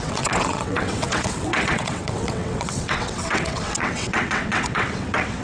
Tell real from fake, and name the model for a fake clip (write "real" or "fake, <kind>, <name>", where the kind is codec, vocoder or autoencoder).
fake, vocoder, WaveNeXt